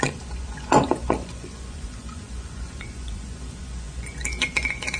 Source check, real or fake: fake